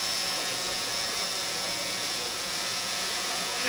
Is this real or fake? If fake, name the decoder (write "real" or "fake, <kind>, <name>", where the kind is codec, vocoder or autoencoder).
fake, vocoder, Vocos